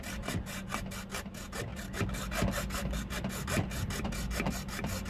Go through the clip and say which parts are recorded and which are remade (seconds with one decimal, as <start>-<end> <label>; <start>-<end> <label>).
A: 0.0-5.1 recorded